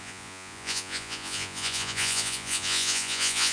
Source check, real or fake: fake